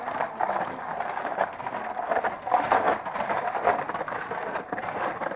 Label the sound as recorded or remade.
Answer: recorded